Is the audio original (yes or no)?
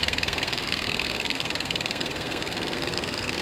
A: no